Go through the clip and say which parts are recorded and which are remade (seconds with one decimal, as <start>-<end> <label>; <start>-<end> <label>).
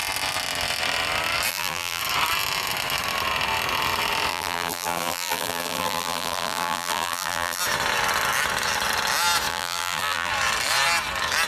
0.0-1.5 recorded; 1.5-2.0 remade; 2.0-4.3 recorded; 4.3-7.6 remade; 7.6-9.5 recorded; 9.5-10.3 remade; 10.3-11.5 recorded